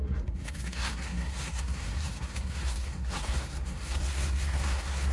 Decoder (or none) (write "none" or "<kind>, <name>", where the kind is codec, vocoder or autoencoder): codec, SNAC